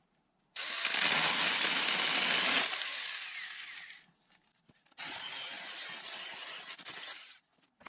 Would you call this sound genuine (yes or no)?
yes